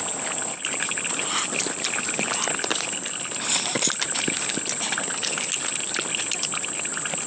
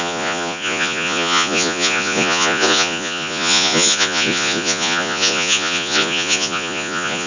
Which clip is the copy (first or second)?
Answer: second